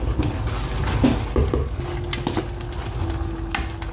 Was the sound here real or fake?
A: real